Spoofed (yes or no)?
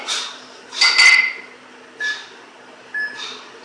no